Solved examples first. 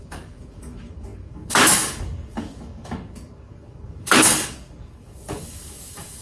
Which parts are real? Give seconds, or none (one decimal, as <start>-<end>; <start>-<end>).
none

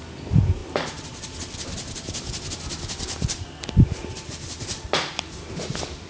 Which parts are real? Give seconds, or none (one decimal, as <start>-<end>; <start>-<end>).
0.0-6.1

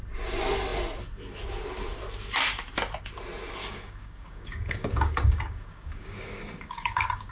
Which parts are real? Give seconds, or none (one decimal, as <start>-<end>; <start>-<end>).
0.0-3.6